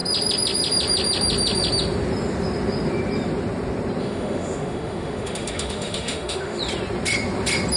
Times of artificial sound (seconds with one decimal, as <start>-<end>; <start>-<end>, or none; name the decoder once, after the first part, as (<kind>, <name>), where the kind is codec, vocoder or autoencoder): 4.0-6.6 (autoencoder, DAC-VAE)